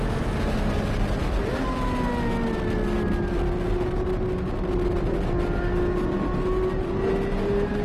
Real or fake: real